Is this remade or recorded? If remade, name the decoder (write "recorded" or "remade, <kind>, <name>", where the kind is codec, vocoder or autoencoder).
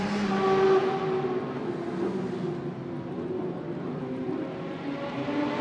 recorded